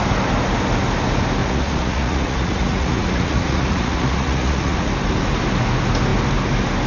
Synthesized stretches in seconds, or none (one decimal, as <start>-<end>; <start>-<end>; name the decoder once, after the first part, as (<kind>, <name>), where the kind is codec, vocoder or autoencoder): 1.4-4.9 (vocoder, Vocos)